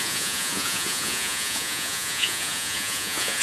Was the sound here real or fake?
fake